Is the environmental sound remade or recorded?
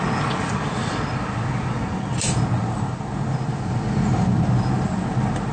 recorded